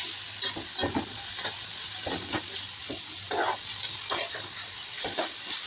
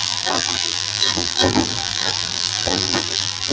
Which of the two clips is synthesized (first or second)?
second